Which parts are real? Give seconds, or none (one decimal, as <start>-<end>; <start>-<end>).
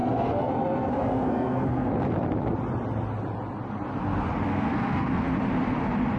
1.9-4.5; 5.3-6.2